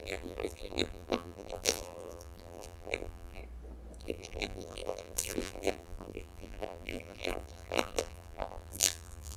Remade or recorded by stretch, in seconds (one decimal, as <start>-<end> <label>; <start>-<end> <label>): 0.0-3.4 remade; 3.4-4.0 recorded; 4.0-9.4 remade